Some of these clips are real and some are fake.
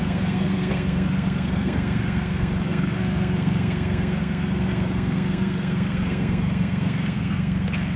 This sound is fake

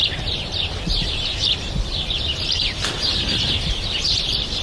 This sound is fake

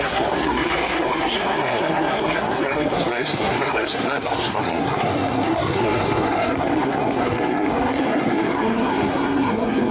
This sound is fake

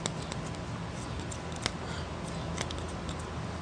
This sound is real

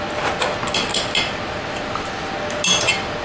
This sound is real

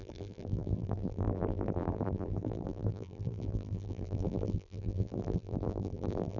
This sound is fake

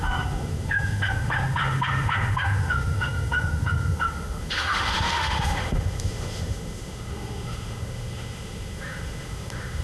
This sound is fake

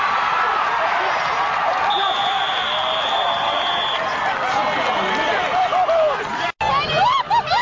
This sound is real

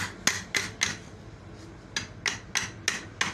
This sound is real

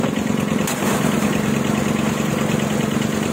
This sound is real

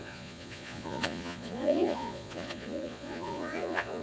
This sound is fake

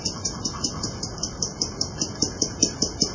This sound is real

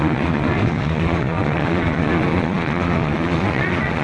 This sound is fake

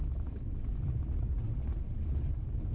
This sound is real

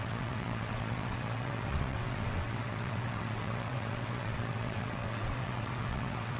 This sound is fake